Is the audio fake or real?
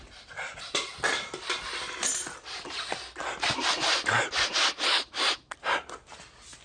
real